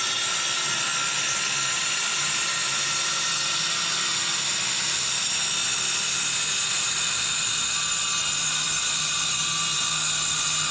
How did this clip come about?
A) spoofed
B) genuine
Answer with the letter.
B